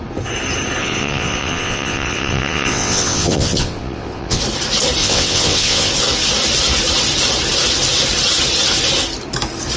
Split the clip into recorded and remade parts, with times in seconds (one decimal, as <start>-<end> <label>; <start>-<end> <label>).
0.0-0.8 recorded; 0.8-4.4 remade; 4.4-5.0 recorded; 5.0-5.9 remade; 5.9-9.8 recorded